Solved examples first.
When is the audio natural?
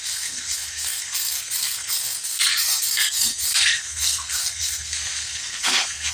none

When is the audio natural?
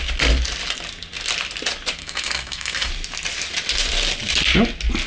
0.0-2.0; 2.9-5.1